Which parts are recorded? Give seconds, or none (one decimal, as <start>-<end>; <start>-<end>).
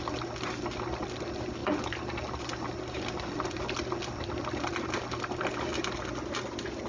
0.0-6.9